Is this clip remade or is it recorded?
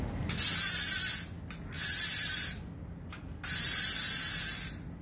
recorded